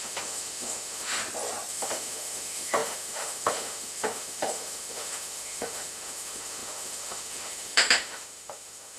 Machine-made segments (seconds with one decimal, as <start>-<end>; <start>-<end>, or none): 0.0-1.2; 1.7-9.0